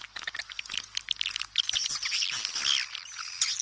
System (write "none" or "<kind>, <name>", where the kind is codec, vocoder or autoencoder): none